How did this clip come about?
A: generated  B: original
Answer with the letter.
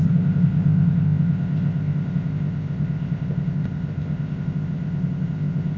A